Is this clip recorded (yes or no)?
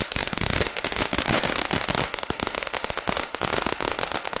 no